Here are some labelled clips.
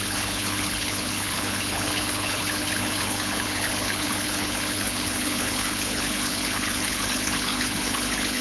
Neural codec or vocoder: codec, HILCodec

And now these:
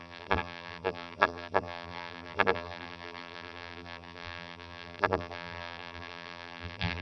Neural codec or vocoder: vocoder, BigVGAN v2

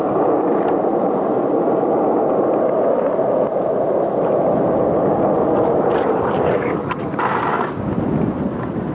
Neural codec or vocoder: none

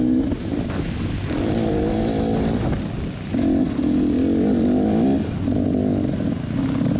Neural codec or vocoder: none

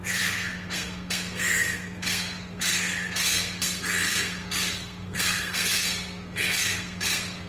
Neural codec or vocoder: codec, SNAC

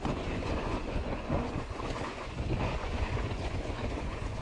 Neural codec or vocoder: vocoder, Vocos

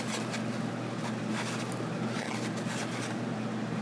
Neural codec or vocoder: none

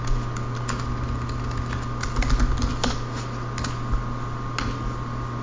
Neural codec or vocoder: none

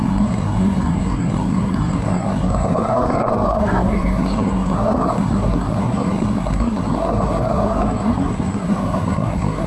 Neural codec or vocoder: codec, SNAC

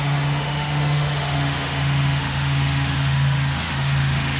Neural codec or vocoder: autoencoder, DAC-VAE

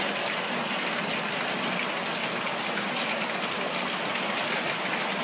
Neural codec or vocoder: none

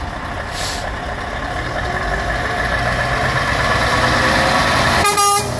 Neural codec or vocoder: none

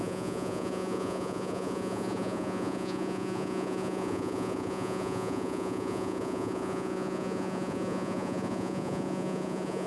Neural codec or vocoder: vocoder, Vocos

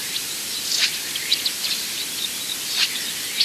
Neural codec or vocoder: vocoder, BigVGAN v2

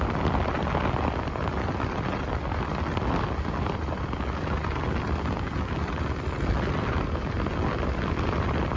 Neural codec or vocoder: none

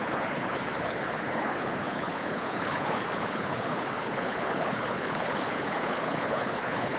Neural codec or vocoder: codec, HILCodec